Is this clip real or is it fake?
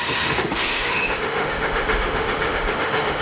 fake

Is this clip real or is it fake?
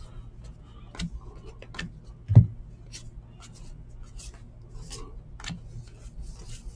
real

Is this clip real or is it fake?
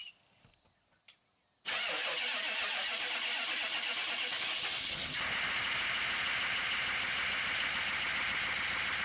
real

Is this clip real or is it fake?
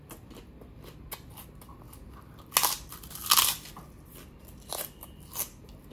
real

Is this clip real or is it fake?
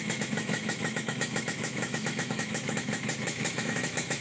fake